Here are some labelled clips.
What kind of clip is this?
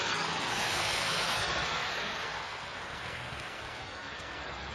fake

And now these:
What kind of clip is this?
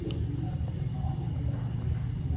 real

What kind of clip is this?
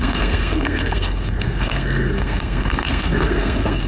fake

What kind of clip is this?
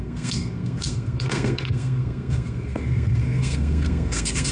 fake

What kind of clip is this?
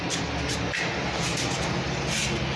real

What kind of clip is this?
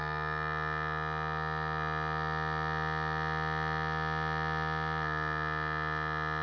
real